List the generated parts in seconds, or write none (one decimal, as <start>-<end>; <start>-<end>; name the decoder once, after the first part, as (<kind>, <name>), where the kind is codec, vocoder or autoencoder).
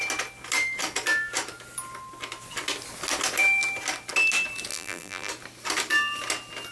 4.7-5.3 (vocoder, BigVGAN v2)